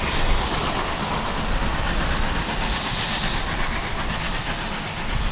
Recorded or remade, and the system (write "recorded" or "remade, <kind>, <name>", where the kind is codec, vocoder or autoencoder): recorded